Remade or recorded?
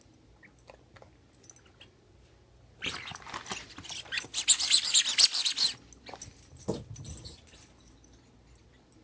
recorded